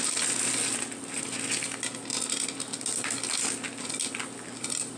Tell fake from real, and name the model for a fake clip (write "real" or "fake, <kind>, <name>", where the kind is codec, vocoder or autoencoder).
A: real